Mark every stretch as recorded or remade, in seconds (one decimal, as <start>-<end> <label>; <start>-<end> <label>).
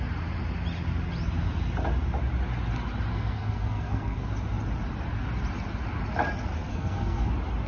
0.0-3.1 recorded; 3.1-4.3 remade; 4.3-6.7 recorded; 6.7-7.3 remade; 7.3-7.7 recorded